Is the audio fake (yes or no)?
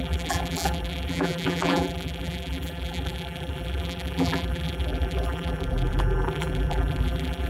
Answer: yes